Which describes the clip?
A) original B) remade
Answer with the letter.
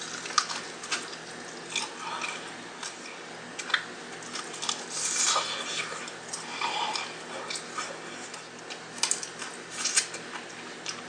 A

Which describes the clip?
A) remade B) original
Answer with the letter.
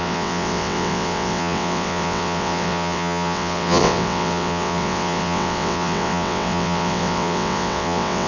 A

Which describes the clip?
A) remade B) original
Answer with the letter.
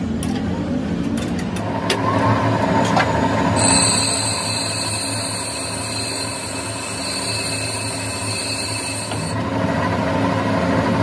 B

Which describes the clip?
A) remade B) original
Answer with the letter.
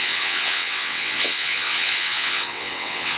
A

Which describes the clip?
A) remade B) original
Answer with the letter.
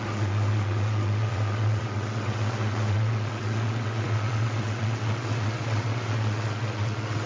A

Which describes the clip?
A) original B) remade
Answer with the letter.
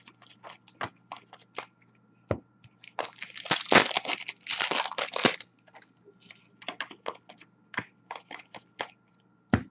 A